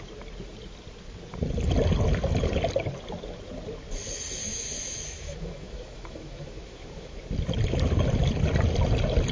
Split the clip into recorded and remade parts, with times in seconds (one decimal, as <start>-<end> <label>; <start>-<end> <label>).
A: 0.0-4.4 recorded; 4.4-7.2 remade; 7.2-9.3 recorded